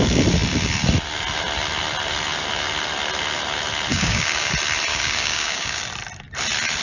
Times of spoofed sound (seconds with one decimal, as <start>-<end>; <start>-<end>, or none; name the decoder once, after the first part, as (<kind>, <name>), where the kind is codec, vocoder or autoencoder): 3.9-4.5 (codec, DAC); 4.9-5.8